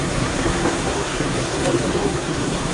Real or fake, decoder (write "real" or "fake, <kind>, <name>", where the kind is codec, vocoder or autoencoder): fake, codec, SNAC